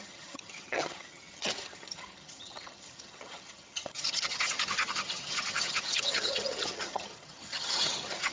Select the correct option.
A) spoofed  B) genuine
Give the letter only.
A